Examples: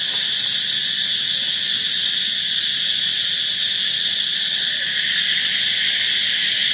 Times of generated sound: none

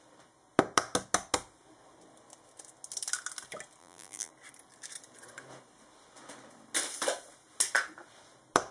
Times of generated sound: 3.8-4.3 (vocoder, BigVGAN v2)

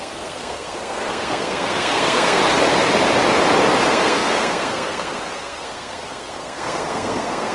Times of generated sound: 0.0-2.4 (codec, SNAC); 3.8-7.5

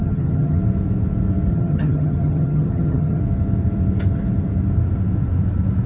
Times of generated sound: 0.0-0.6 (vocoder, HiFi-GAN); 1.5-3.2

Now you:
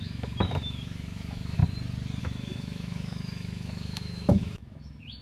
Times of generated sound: 0.0-1.6 (autoencoder, DAC-VAE); 2.2-5.2

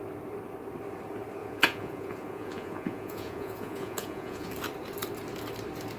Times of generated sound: 1.4-4.5 (vocoder, Vocos)